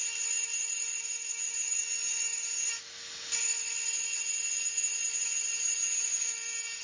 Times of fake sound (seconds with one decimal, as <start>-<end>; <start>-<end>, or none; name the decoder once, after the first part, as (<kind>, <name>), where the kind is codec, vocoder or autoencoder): none